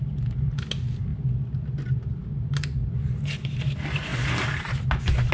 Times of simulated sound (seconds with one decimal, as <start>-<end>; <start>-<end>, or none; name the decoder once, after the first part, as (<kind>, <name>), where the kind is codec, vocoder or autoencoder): none